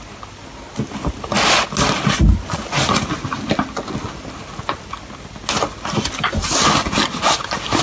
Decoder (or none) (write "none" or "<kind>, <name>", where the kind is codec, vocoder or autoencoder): none